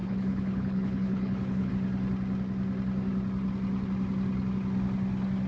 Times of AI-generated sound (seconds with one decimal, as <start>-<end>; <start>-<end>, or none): 0.0-1.7